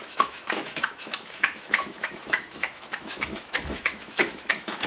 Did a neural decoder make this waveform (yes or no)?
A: yes